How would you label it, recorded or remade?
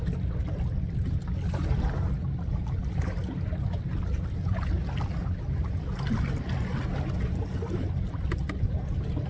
recorded